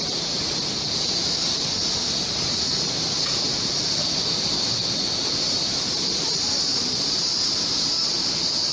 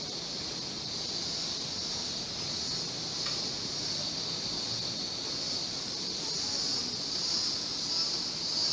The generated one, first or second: first